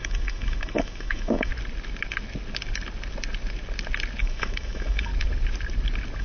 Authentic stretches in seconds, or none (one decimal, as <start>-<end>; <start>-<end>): 1.5-4.2; 5.1-6.2

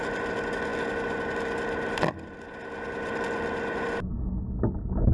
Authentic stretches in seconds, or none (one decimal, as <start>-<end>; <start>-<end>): 0.0-5.1

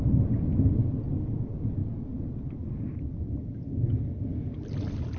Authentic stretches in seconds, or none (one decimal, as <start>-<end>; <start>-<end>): 0.0-5.2

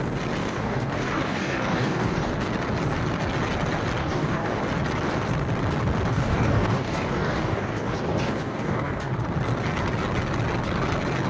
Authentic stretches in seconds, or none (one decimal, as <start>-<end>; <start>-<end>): 0.0-0.4; 2.3-4.0; 4.6-6.1; 9.1-11.3

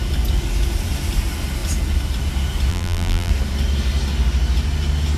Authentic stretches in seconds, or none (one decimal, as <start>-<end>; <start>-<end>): 0.0-2.7; 3.3-5.2

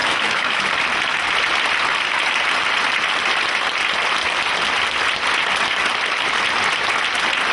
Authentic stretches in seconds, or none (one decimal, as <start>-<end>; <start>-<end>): 0.7-7.5

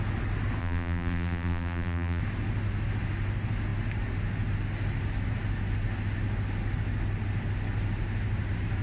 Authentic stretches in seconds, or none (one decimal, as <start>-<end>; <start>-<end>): 0.0-0.6; 2.2-8.8